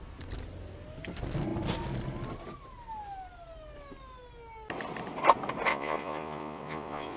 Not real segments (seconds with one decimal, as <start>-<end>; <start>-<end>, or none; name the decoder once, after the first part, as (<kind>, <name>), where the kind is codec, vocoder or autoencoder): 5.7-7.2 (vocoder, Vocos)